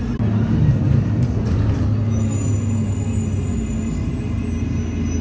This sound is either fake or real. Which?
real